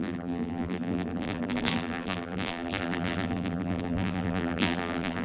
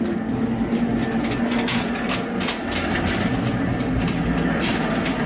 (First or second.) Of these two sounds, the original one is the second